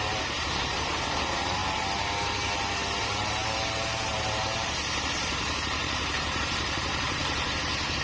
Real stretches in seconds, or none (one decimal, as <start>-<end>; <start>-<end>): 1.6-3.0; 7.2-8.0